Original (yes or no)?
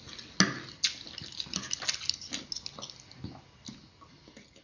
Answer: yes